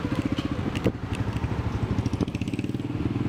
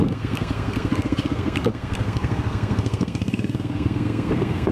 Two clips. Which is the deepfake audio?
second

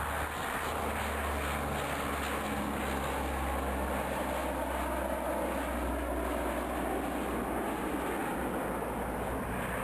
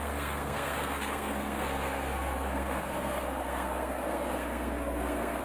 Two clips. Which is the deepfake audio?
second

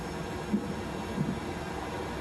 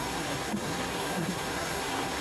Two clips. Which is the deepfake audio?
second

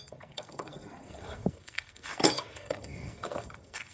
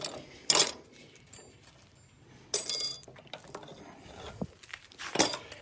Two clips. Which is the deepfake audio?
first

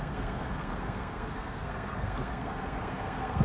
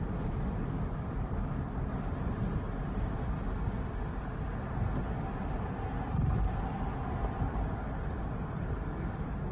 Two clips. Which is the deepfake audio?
first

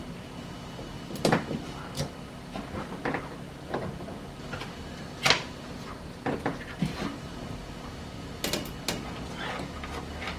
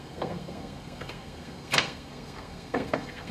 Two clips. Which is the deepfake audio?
second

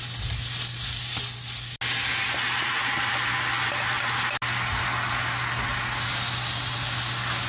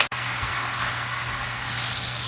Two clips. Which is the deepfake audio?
second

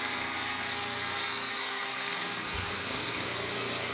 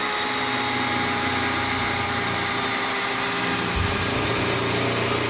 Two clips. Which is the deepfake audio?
first